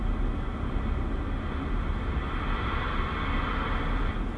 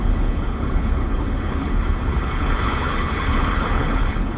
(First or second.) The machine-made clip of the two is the second